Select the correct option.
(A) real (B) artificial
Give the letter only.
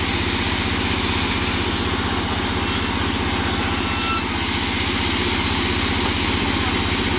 A